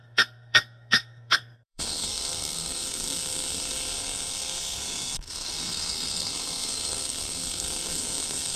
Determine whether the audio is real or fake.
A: fake